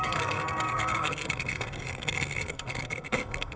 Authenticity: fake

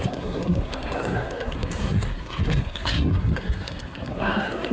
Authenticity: fake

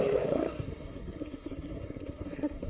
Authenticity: fake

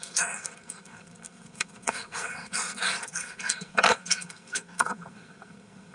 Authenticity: fake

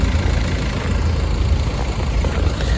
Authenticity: real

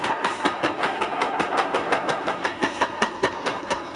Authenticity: fake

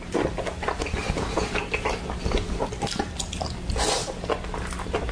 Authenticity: real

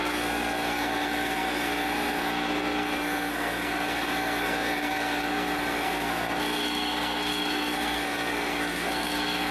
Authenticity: fake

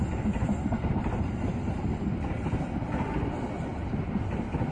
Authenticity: real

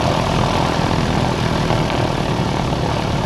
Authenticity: real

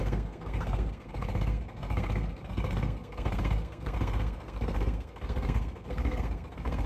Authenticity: fake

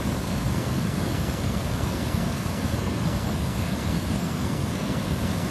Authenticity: fake